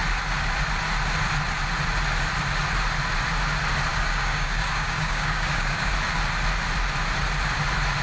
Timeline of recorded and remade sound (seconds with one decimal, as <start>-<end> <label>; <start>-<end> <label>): 0.0-3.9 recorded; 3.9-5.9 remade; 5.9-8.0 recorded